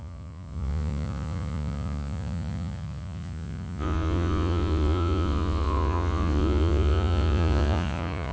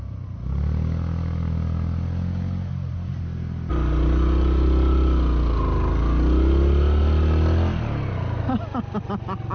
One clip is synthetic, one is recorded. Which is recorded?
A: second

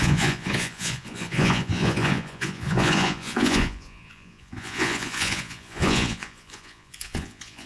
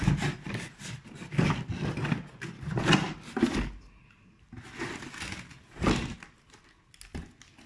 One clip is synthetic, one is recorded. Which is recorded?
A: second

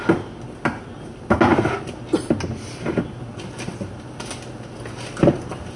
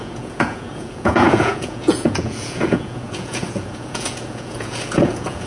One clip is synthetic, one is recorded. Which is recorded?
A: first